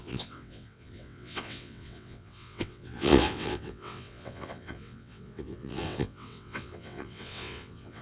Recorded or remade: remade